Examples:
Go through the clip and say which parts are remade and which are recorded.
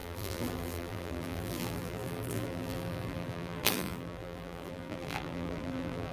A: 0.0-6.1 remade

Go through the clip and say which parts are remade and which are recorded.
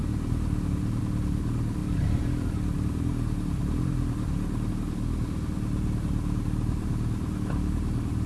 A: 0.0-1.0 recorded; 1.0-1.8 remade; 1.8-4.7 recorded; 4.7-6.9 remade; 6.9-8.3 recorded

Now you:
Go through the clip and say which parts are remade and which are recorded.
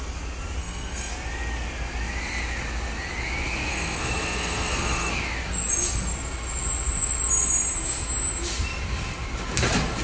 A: 0.0-0.6 recorded; 0.6-1.1 remade; 1.1-3.7 recorded; 3.7-5.1 remade; 5.1-10.0 recorded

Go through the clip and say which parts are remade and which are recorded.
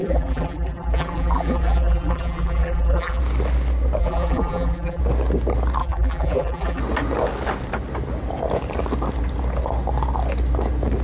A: 0.0-3.2 remade; 3.2-4.0 recorded; 4.0-5.0 remade; 5.0-5.8 recorded; 5.8-6.8 remade; 6.8-11.0 recorded